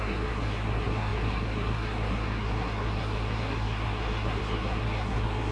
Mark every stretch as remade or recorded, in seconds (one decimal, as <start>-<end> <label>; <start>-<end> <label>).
0.0-5.5 remade

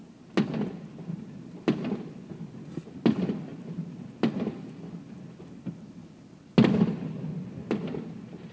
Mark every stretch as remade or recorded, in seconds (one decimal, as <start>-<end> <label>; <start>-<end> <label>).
0.0-8.5 recorded

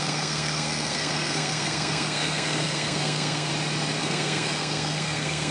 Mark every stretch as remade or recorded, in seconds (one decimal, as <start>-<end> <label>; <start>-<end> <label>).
0.0-3.5 remade; 3.5-4.0 recorded; 4.0-5.5 remade